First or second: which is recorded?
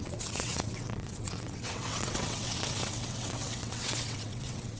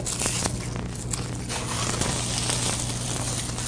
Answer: second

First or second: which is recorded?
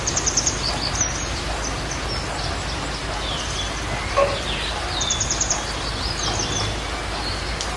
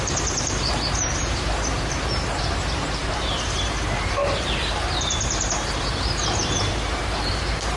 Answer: first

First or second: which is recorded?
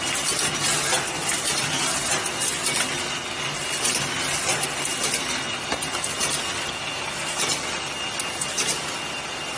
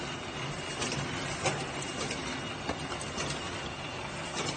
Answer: first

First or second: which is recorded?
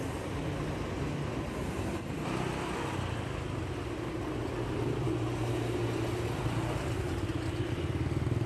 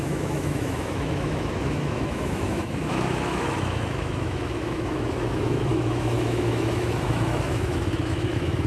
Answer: first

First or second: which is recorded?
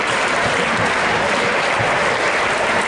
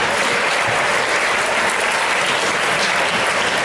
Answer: second